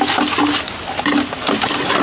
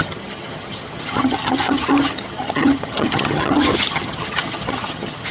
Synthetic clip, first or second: second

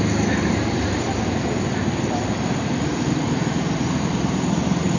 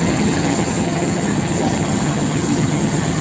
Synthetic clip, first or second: second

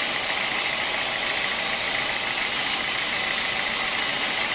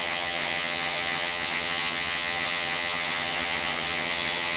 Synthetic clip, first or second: second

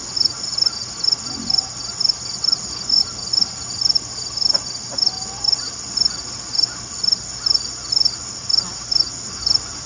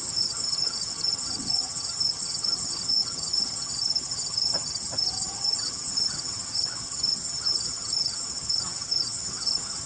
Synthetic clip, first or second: second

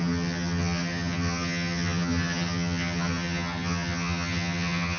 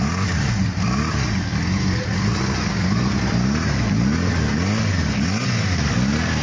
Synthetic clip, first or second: first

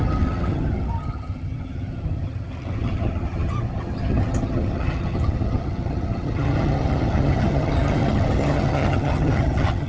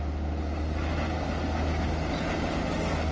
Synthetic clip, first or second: first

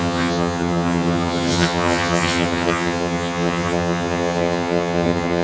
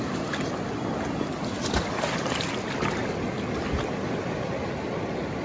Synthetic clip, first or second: first